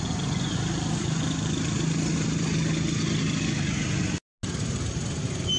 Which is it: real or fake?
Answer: real